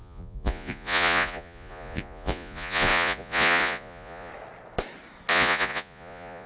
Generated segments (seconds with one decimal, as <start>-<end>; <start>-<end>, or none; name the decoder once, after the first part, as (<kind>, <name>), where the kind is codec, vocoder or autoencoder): 0.0-4.3 (vocoder, Vocos); 5.3-6.5